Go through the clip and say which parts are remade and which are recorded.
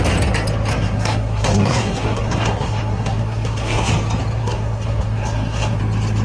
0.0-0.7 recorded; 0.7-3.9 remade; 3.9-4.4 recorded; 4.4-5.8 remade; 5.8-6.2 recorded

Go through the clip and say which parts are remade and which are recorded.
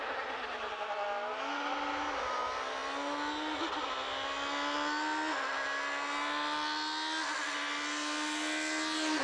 0.0-9.2 recorded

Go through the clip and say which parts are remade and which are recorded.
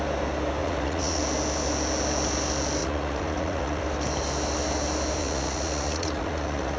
0.0-0.6 recorded; 0.6-1.2 remade; 1.2-2.8 recorded; 2.8-3.8 remade; 3.8-5.2 recorded; 5.2-6.8 remade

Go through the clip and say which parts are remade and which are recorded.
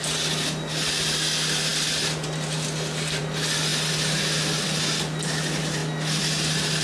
0.0-6.8 recorded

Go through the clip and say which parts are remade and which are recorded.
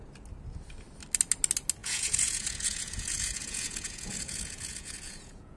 0.0-1.8 recorded; 1.8-5.6 remade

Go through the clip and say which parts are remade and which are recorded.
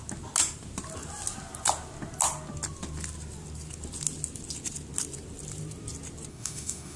0.0-6.3 recorded; 6.3-7.0 remade